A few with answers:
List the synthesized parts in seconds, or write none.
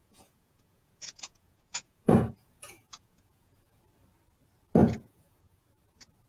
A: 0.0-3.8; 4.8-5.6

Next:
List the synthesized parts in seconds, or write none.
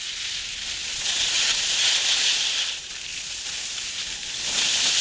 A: 0.8-2.4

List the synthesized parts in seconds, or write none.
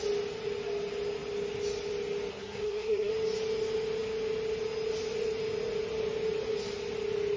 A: 2.3-3.1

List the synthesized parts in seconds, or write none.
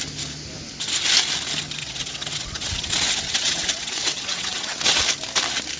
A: 1.8-5.0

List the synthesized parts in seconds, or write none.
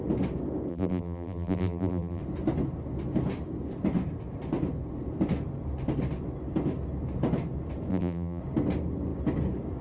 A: 0.7-2.2; 7.9-8.4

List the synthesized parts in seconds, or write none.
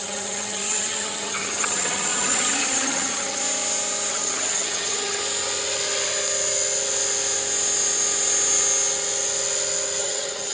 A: 0.0-3.4; 4.1-5.2; 10.0-10.5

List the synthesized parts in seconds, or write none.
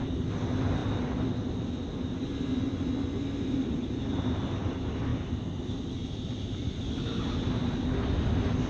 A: none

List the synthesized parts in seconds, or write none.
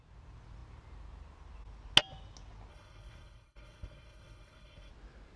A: 2.7-4.9